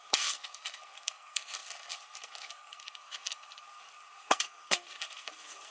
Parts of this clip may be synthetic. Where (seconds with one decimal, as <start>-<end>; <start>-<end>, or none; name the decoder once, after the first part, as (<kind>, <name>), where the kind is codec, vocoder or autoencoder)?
0.0-5.7 (codec, SNAC)